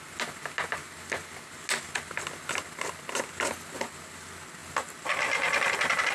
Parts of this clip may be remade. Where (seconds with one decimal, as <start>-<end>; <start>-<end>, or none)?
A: none